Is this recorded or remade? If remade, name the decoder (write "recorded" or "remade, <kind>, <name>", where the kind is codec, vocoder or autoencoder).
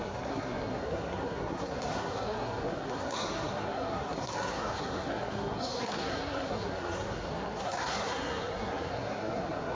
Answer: remade, codec, SNAC